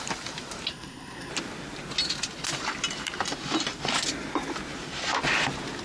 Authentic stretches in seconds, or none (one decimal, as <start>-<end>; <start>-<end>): 0.0-0.7; 1.3-5.8